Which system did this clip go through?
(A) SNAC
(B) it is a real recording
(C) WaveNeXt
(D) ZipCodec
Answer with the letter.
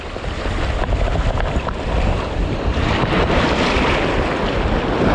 B